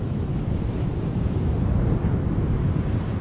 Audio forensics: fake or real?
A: fake